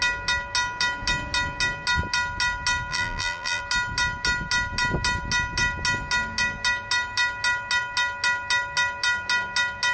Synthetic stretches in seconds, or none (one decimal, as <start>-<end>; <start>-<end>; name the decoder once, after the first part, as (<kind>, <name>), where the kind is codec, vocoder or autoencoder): 2.9-3.6 (vocoder, BigVGAN v2)